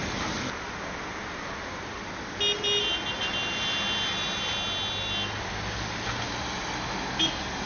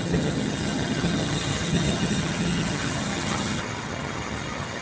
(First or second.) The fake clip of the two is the second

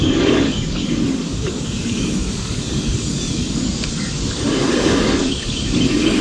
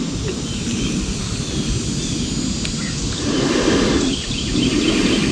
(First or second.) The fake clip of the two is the first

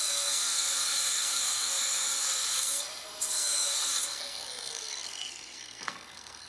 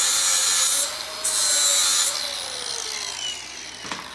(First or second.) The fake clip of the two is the first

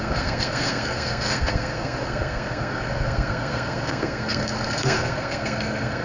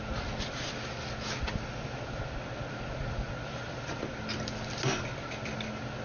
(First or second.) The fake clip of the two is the first